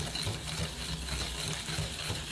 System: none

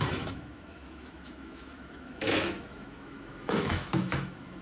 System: autoencoder, DAC-VAE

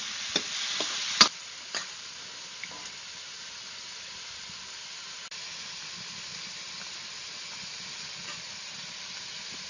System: none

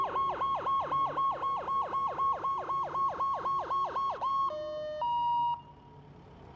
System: none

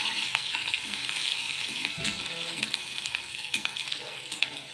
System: codec, SNAC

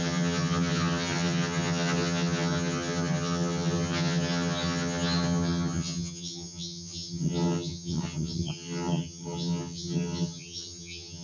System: vocoder, HiFi-GAN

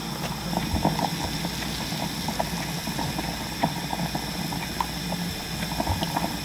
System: none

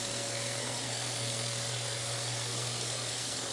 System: codec, SNAC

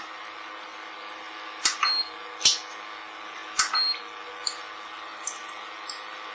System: none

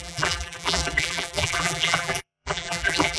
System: vocoder, BigVGAN v2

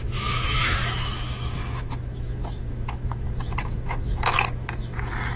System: autoencoder, DAC-VAE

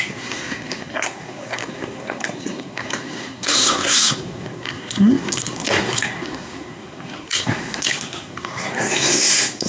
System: codec, SNAC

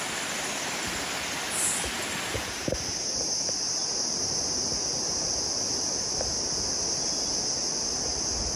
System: none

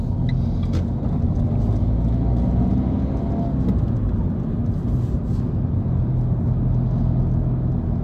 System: none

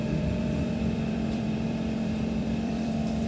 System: vocoder, BigVGAN v2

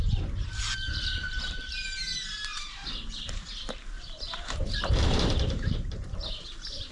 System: vocoder, BigVGAN v2